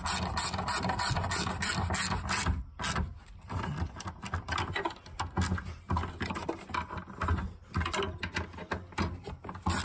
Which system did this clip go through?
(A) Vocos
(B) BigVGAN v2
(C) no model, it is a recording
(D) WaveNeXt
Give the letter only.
C